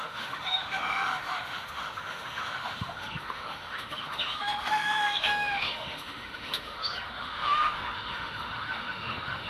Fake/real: fake